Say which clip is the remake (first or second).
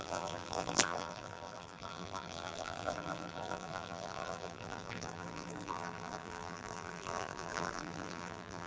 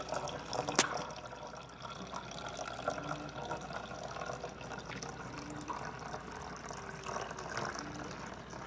first